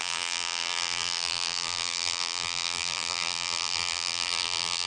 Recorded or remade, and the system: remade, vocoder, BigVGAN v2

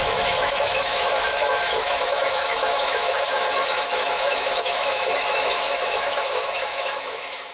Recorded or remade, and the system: remade, autoencoder, DAC-VAE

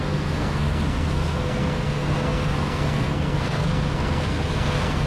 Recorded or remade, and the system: remade, codec, SNAC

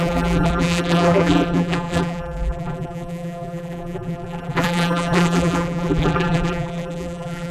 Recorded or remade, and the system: remade, vocoder, BigVGAN v2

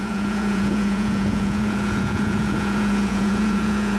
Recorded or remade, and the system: remade, vocoder, Vocos